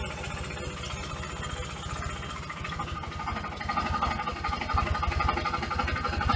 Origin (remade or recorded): recorded